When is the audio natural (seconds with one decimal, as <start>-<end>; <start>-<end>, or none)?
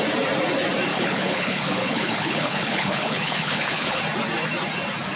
0.0-0.9; 4.0-5.2